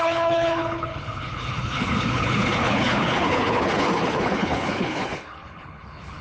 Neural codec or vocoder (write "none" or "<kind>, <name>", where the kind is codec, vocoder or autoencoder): codec, HILCodec